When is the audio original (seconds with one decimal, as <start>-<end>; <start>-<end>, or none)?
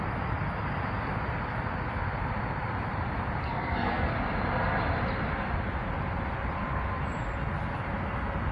0.0-3.4; 4.1-8.5